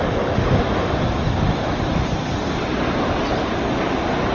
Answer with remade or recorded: recorded